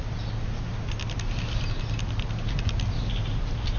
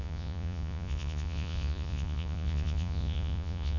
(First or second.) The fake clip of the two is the second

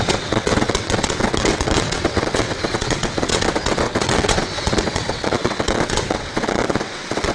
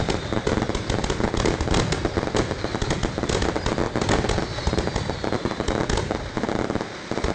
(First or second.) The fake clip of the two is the first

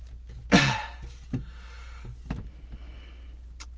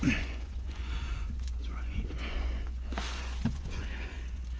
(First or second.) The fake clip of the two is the second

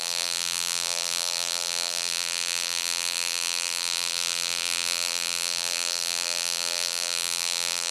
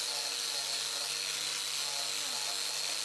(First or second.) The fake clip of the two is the first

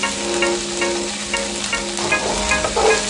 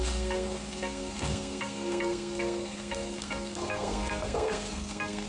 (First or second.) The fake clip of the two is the second